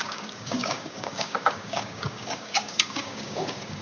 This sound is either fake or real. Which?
fake